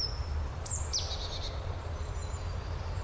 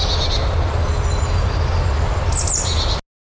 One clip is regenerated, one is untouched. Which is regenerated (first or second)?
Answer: first